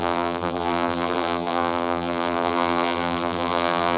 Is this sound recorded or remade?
remade